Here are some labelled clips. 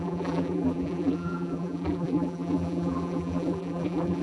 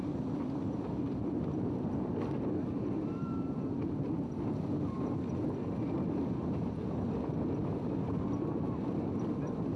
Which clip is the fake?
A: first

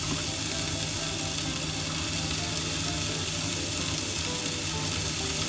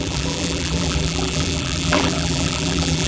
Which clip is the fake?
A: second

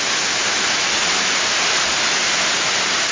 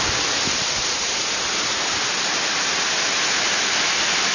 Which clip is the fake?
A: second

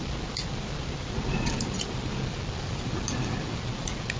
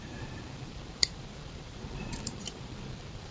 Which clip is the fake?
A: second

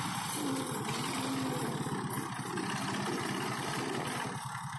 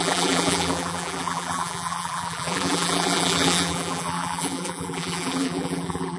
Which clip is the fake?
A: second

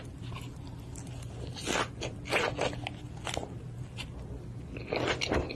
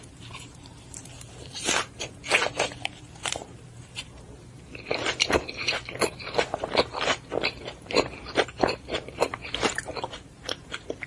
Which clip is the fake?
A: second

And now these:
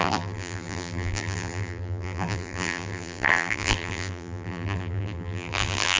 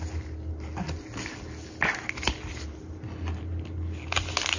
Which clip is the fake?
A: first